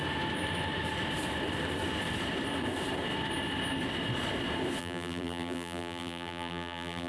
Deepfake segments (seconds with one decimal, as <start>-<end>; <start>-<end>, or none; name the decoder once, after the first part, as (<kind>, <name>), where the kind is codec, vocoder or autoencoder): 4.8-7.1 (vocoder, BigVGAN v2)